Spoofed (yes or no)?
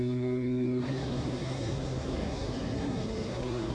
yes